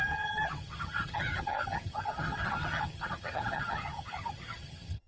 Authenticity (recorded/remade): remade